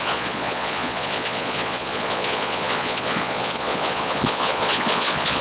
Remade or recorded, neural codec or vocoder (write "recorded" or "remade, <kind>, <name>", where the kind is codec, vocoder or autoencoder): remade, vocoder, Vocos